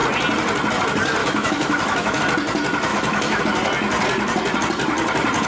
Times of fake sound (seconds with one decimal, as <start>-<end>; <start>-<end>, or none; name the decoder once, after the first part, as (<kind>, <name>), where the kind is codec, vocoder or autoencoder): 1.2-2.2 (autoencoder, DAC-VAE); 2.9-3.4